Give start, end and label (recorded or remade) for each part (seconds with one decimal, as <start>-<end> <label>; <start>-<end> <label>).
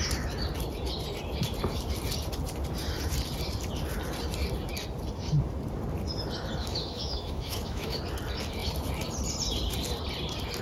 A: 0.0-6.6 recorded; 6.6-8.0 remade; 8.0-10.6 recorded